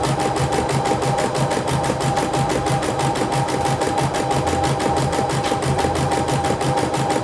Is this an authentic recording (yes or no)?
yes